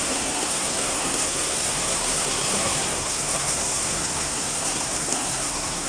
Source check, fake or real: fake